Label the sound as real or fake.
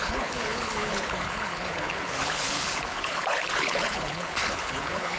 fake